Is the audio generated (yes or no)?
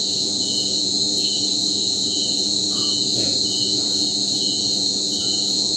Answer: yes